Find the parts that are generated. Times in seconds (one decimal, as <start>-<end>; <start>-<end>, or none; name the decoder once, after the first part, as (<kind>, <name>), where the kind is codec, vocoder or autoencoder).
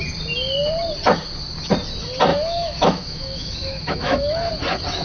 2.3-4.5 (autoencoder, DAC-VAE)